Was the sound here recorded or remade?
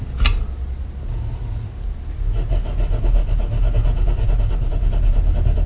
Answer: recorded